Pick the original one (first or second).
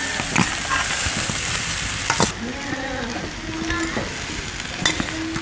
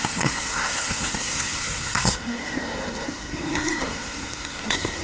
first